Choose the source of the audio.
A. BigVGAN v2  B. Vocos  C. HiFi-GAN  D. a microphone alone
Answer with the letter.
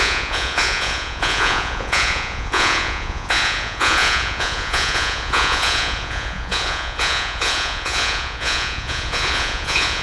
B